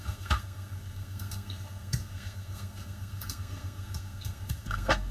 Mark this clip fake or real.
fake